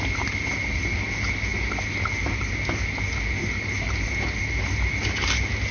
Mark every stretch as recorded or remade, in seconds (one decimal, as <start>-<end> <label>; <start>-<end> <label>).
0.0-5.7 recorded